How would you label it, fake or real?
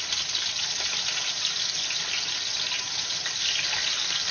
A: real